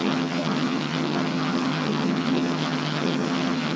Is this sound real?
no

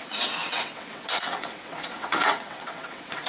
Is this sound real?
no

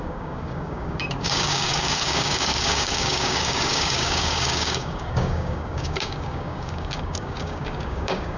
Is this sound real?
no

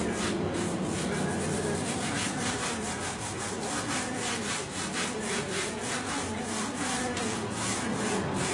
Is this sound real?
no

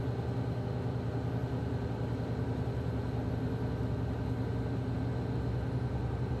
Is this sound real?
yes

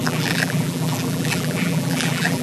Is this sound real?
no